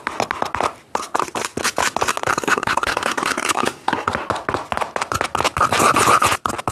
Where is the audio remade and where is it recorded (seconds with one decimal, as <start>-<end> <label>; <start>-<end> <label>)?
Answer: 0.0-2.3 recorded; 2.3-4.1 remade; 4.1-6.7 recorded